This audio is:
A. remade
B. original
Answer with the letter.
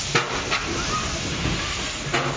B